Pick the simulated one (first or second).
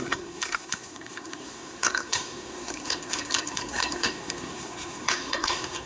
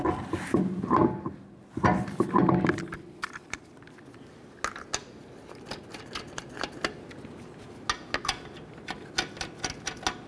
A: first